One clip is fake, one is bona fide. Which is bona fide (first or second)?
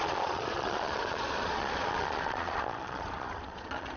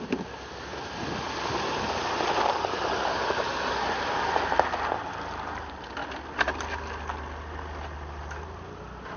second